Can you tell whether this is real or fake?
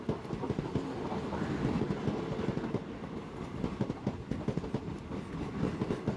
real